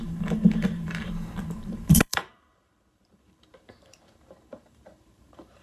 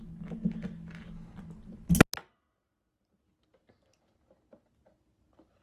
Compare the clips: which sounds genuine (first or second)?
second